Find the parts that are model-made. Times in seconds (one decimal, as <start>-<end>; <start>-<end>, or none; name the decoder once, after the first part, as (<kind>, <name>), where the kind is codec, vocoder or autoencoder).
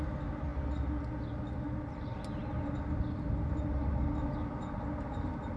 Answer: none